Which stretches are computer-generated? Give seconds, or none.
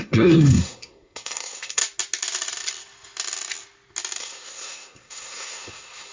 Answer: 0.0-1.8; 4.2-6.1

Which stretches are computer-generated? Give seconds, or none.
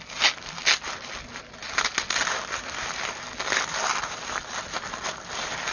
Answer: none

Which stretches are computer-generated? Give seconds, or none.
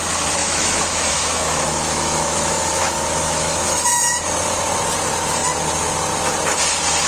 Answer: 0.4-4.2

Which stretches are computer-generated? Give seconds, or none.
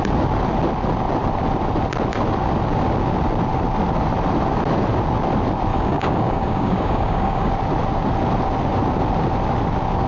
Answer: 5.7-7.5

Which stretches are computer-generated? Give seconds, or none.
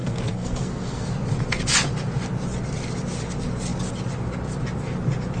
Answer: 0.0-1.1